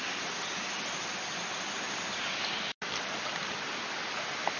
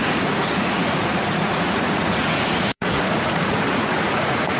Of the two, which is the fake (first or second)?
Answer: second